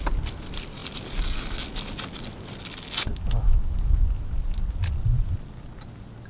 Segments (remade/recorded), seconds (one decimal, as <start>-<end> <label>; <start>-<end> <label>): 0.0-6.3 recorded